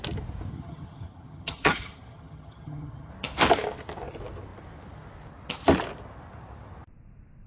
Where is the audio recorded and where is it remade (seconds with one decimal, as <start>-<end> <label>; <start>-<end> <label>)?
0.0-0.5 recorded; 0.5-3.1 remade; 3.1-7.5 recorded